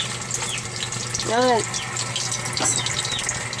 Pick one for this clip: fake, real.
real